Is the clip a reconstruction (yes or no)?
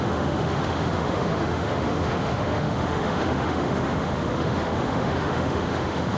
yes